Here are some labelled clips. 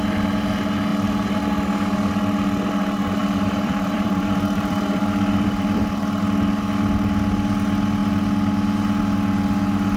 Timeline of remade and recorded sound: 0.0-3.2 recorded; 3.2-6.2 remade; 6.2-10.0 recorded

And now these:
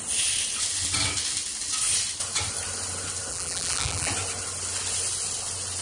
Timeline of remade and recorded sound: 0.0-3.3 recorded; 3.3-4.1 remade; 4.1-5.8 recorded

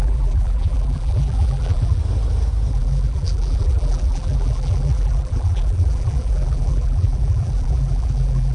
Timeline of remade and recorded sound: 0.0-2.0 remade; 2.0-2.7 recorded; 2.7-8.5 remade

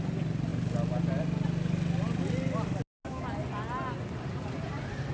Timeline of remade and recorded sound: 0.0-5.1 recorded

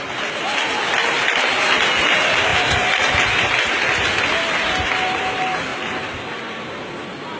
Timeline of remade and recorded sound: 0.0-7.4 remade

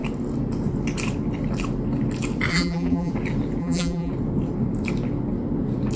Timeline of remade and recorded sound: 0.0-2.5 recorded; 2.5-3.1 remade; 3.1-3.6 recorded; 3.6-4.1 remade; 4.1-6.0 recorded